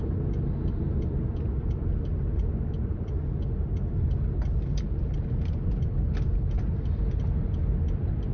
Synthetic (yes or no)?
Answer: no